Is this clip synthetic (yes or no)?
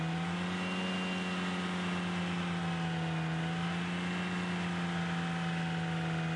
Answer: no